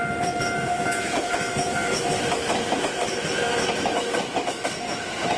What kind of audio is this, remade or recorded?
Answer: remade